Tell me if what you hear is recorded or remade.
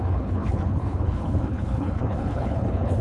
remade